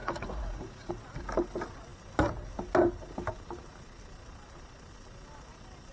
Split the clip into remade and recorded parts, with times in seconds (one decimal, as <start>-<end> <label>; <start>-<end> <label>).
0.0-0.9 remade; 0.9-5.9 recorded